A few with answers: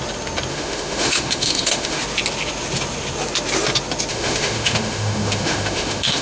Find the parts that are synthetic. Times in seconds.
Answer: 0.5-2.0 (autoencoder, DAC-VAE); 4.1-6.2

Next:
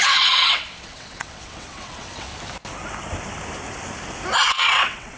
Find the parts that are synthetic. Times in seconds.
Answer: 0.0-2.3 (vocoder, WaveNeXt); 4.5-5.2

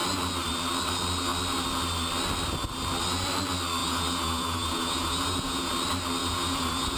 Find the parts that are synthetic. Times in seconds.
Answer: 3.8-5.7 (vocoder, Vocos); 6.2-7.0

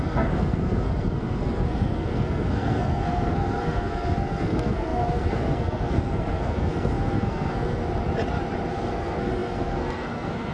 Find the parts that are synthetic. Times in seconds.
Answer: 0.0-7.8 (codec, SNAC); 8.7-10.5